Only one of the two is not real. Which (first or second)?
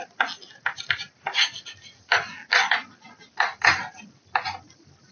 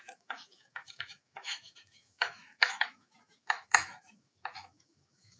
second